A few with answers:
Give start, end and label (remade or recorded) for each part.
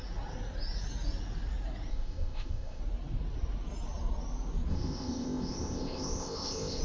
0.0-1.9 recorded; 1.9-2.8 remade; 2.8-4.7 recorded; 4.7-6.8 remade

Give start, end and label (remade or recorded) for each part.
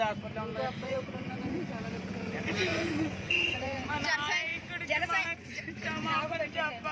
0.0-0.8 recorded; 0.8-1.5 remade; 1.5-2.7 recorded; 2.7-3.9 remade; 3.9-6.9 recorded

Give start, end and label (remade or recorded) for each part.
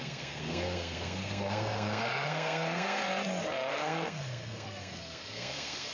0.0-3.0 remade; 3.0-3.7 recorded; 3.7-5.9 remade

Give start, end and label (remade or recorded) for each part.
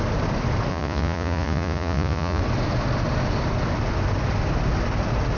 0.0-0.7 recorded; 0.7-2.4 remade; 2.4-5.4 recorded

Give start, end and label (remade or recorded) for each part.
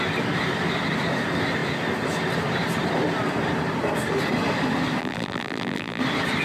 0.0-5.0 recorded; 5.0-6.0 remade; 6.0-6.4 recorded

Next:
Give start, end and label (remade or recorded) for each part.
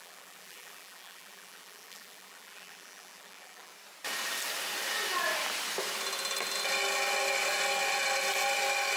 0.0-3.7 remade; 3.7-9.0 recorded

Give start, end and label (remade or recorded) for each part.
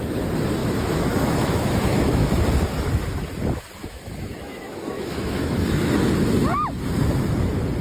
0.0-0.6 recorded; 0.6-2.3 remade; 2.3-3.8 recorded; 3.8-6.1 remade; 6.1-7.8 recorded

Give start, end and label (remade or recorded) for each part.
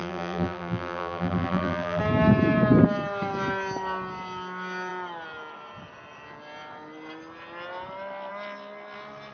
0.0-2.0 remade; 2.0-9.3 recorded